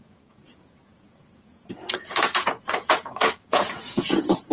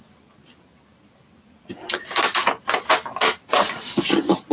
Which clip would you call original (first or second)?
second